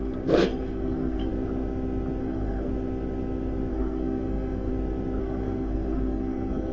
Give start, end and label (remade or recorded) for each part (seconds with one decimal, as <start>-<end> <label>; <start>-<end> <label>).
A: 0.0-1.3 remade; 1.3-2.2 recorded; 2.2-2.7 remade; 2.7-3.7 recorded; 3.7-4.7 remade; 4.7-5.2 recorded; 5.2-6.7 remade